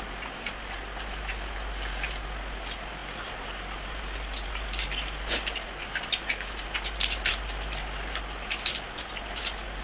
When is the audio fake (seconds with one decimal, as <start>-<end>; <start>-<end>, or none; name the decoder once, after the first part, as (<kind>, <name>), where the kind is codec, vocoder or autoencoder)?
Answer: none